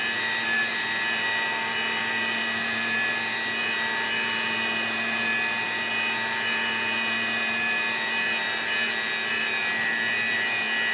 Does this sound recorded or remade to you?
recorded